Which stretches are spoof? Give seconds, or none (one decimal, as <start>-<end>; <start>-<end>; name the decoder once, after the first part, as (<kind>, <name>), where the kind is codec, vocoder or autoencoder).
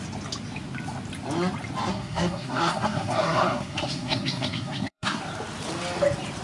1.9-5.2 (codec, SNAC)